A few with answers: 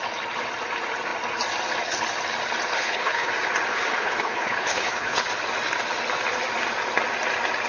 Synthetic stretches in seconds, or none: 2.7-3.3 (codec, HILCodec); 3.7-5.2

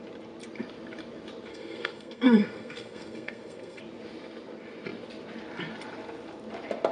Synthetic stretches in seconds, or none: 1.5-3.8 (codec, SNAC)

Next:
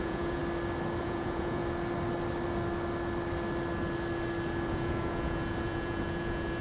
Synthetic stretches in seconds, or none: 0.0-0.4 (vocoder, Vocos); 1.0-1.6; 4.7-6.6